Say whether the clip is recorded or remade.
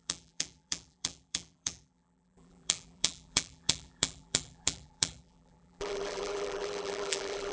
remade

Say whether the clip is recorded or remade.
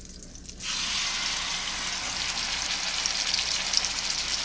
recorded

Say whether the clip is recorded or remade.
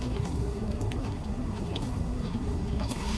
remade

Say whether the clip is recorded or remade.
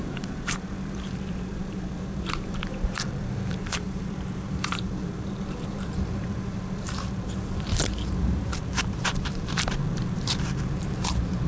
remade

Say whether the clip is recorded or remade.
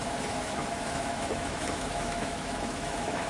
remade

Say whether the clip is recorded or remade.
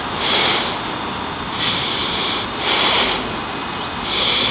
recorded